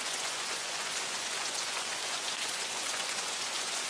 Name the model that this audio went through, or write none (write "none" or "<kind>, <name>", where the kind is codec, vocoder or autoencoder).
vocoder, Vocos